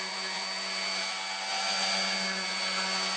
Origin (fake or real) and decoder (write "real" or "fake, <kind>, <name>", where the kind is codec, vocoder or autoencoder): real